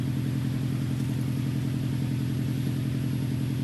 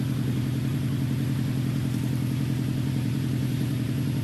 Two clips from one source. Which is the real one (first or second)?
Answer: first